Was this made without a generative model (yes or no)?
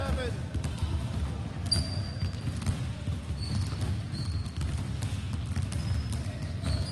yes